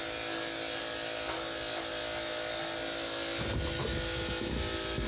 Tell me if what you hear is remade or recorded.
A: recorded